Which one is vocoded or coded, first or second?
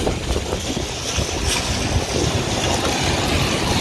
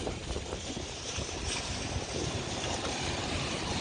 second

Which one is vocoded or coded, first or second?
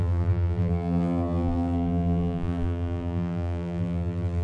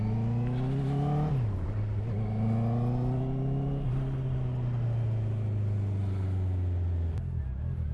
first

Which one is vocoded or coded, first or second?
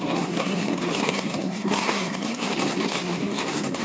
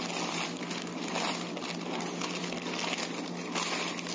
first